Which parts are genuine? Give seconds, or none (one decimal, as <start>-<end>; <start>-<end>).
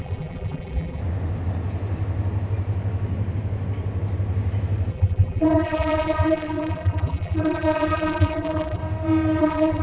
1.0-4.9; 8.8-9.4